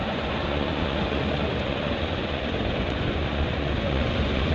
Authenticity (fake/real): fake